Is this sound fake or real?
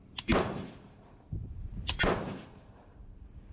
fake